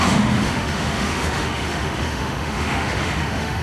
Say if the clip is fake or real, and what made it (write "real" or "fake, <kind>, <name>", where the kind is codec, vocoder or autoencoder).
fake, autoencoder, DAC-VAE